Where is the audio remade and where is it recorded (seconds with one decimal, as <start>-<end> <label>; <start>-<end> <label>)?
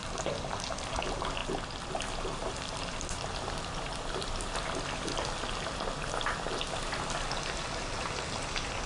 0.0-8.9 recorded